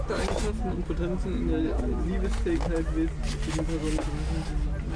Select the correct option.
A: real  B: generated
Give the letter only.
A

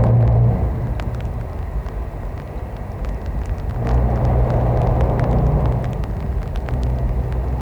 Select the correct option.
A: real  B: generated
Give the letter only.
A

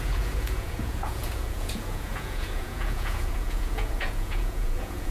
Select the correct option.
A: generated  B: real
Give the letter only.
A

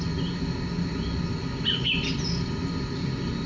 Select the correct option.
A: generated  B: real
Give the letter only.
B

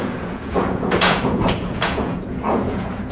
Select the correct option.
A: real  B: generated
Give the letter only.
B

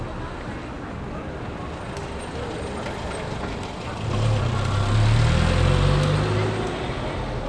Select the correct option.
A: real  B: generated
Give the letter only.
A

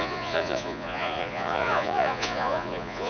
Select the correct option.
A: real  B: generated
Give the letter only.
B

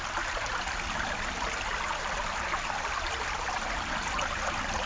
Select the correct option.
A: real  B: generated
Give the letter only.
A